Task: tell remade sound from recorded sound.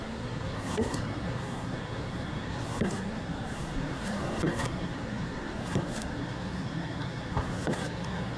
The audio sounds remade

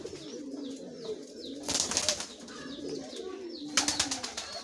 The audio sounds recorded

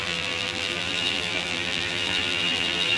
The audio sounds remade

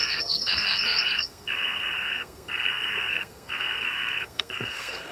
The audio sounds remade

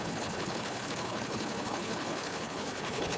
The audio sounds remade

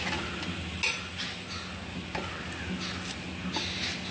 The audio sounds recorded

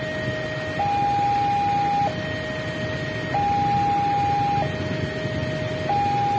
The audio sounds recorded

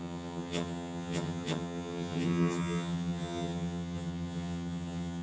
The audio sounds remade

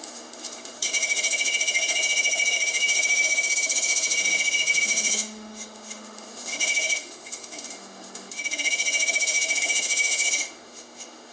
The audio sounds remade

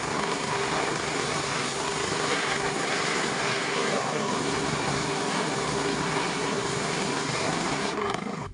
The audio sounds remade